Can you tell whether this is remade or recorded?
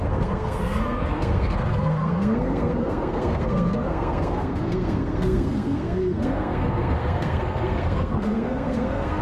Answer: remade